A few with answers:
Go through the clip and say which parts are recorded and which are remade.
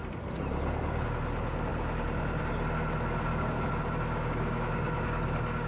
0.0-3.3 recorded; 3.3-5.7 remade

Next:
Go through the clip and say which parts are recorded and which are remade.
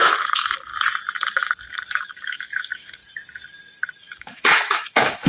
0.0-0.7 remade; 0.7-2.0 recorded; 2.0-3.0 remade; 3.0-4.0 recorded; 4.0-5.3 remade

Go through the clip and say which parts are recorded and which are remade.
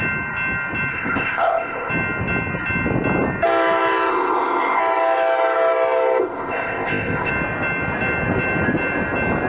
0.0-0.9 recorded; 0.9-1.9 remade; 1.9-4.1 recorded; 4.1-4.8 remade; 4.8-6.2 recorded; 6.2-7.3 remade; 7.3-9.5 recorded